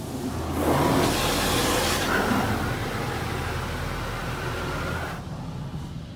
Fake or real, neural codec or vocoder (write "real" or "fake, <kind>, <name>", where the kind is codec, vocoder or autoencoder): real